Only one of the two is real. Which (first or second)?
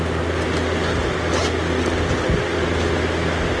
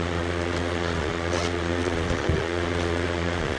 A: first